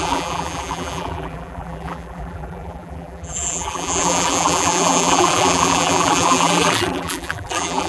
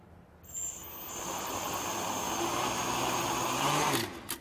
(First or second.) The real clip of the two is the second